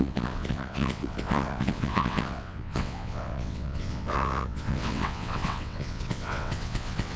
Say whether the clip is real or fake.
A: fake